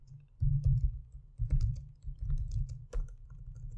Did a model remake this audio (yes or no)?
no